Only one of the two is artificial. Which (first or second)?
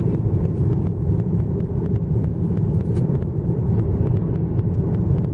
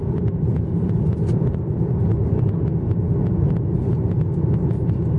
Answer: first